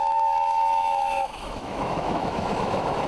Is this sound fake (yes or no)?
yes